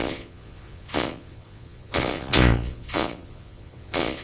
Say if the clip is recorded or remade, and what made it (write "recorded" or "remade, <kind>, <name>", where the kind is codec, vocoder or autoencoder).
remade, vocoder, Vocos